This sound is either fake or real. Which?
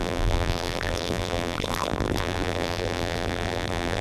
fake